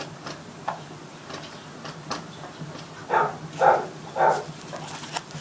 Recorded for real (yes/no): yes